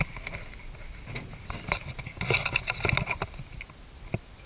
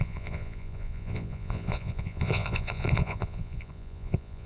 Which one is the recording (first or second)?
first